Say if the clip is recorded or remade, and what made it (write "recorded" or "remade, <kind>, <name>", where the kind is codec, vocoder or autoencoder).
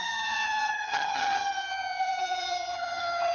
remade, vocoder, HiFi-GAN